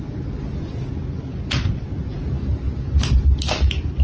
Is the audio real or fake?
real